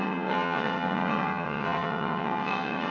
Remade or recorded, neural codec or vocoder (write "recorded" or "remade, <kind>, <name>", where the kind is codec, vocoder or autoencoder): remade, vocoder, WaveNeXt